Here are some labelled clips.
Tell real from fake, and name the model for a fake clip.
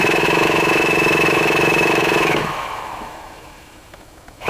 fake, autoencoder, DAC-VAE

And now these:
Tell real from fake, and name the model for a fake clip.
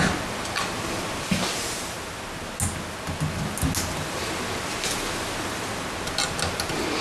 real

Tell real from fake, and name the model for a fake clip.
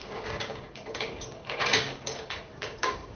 fake, codec, DAC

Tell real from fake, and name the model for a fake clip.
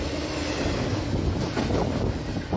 real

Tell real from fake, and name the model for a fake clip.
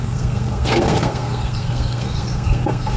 fake, codec, SNAC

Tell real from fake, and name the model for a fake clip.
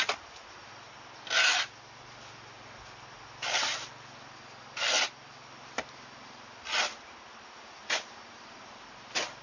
real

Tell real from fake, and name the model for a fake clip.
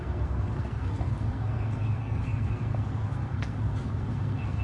fake, codec, SNAC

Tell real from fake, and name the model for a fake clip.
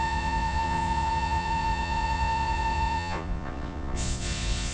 fake, vocoder, Vocos